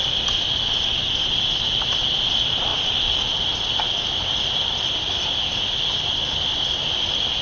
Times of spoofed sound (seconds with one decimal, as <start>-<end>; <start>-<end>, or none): none

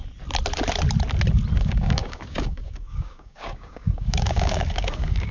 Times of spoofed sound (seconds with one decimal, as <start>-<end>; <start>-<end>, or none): 1.6-5.3

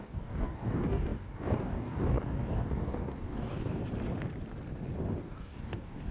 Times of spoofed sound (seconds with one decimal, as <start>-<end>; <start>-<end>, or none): 0.0-3.8; 5.2-6.1

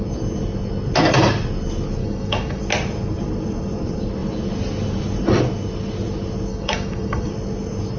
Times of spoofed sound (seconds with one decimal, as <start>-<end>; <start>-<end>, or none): 2.0-2.6; 6.5-7.3

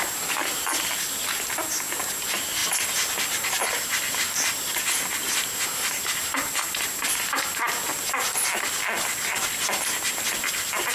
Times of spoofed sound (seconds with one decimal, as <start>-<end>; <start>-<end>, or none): none

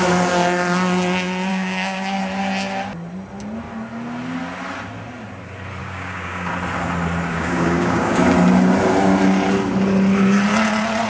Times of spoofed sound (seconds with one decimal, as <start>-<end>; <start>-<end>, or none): 1.5-2.2; 5.8-6.5; 7.3-8.2

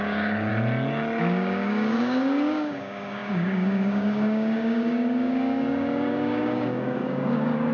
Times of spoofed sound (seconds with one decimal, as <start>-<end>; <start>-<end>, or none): 0.0-0.5; 1.2-7.7

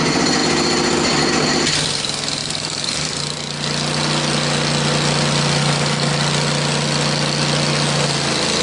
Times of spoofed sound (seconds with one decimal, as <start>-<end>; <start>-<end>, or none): 2.4-3.1; 5.6-6.1